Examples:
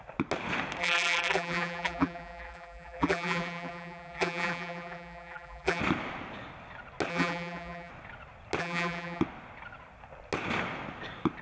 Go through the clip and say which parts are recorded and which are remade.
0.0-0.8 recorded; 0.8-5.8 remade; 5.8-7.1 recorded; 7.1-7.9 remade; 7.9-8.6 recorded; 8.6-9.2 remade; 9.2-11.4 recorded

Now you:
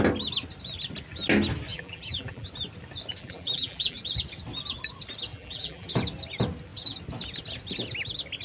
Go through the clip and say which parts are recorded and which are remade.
0.0-1.7 recorded; 1.7-2.5 remade; 2.5-3.2 recorded; 3.2-4.0 remade; 4.0-5.3 recorded; 5.3-5.9 remade; 5.9-8.4 recorded

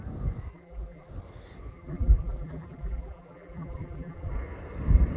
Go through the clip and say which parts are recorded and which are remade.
0.0-0.5 recorded; 0.5-1.1 remade; 1.1-1.7 recorded; 1.7-4.3 remade; 4.3-5.2 recorded

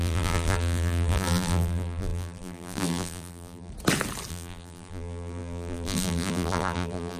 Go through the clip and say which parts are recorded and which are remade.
0.0-3.7 remade; 3.7-4.3 recorded; 4.3-7.2 remade